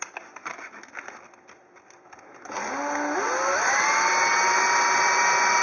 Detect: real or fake real